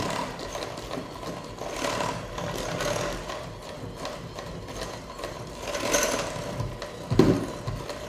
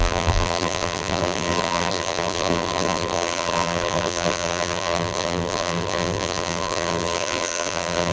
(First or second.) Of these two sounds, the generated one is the second